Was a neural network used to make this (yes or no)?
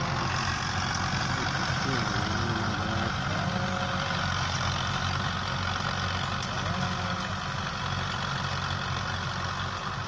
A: no